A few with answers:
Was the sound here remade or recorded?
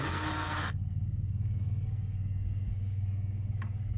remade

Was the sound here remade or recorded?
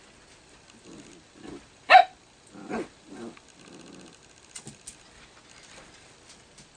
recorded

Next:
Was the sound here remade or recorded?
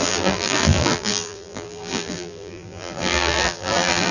remade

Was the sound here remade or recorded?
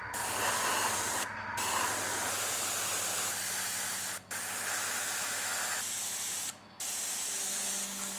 recorded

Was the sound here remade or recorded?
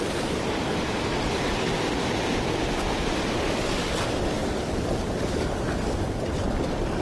recorded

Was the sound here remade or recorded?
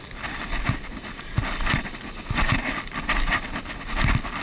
recorded